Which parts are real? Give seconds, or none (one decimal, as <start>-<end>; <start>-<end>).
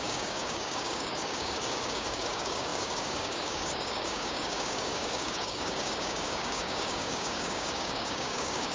none